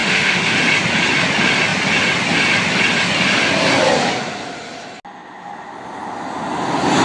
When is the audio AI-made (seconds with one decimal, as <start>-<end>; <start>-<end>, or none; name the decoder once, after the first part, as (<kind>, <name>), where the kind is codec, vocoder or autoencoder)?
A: 0.0-0.6 (autoencoder, DAC-VAE)